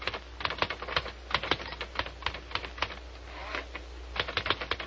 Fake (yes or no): no